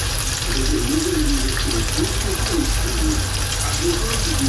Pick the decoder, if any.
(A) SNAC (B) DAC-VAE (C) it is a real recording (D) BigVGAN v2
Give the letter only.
C